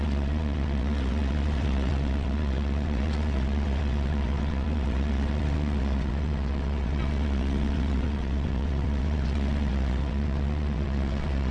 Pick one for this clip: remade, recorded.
remade